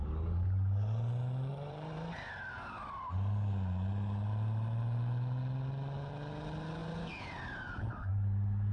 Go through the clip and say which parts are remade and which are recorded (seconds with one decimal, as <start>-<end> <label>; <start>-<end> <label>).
0.0-1.5 recorded; 1.5-2.3 remade; 2.3-8.7 recorded

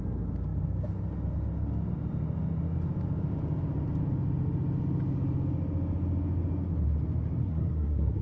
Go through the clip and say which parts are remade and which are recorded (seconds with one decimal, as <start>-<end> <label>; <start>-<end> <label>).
0.0-7.4 recorded; 7.4-8.2 remade

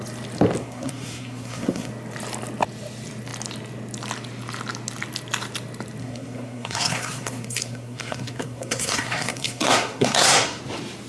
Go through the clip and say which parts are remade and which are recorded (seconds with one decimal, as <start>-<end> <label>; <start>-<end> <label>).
0.0-0.6 recorded; 0.6-1.9 remade; 1.9-6.0 recorded; 6.0-10.6 remade; 10.6-11.1 recorded

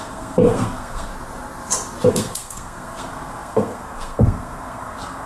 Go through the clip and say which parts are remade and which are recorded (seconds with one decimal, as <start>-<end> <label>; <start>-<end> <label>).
0.0-1.1 remade; 1.1-2.1 recorded; 2.1-5.3 remade

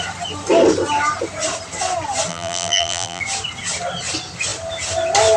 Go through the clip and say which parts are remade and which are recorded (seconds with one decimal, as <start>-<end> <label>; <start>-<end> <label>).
0.0-2.3 recorded; 2.3-3.2 remade; 3.2-5.4 recorded

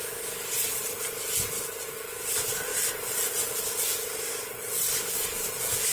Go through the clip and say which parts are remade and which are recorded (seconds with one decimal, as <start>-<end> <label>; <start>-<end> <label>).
0.0-5.9 recorded

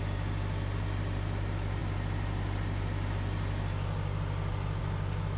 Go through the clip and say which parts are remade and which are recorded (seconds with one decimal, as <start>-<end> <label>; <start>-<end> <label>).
0.0-5.4 recorded